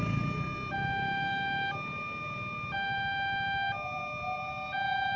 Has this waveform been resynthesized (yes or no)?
no